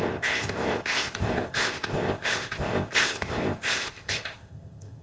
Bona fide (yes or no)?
no